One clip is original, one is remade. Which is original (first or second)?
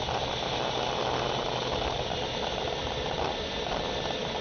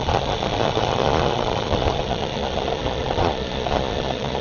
first